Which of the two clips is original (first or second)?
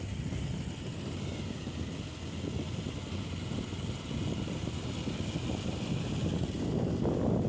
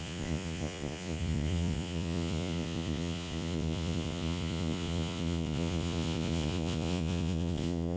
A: first